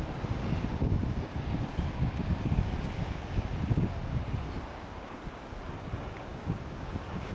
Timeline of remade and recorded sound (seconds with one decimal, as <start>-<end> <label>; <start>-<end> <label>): 0.0-7.3 remade